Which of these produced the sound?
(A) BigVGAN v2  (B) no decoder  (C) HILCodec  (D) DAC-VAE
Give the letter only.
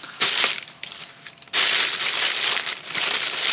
A